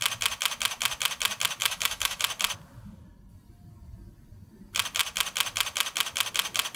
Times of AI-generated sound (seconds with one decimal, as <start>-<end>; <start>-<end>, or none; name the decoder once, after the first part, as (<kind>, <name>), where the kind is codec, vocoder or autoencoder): 1.6-2.2 (autoencoder, DAC-VAE)